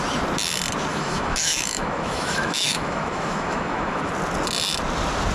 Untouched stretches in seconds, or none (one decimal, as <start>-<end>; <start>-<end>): 0.0-0.9; 4.1-5.3